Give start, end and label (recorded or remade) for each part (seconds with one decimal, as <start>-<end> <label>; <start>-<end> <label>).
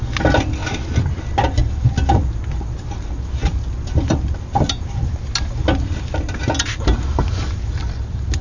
0.0-8.4 recorded